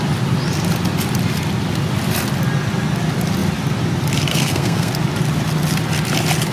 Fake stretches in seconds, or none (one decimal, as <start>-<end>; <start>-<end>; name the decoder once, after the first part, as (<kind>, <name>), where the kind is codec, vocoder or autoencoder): 4.3-4.9 (codec, SNAC)